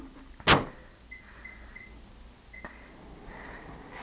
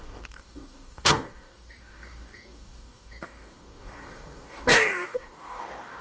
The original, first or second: first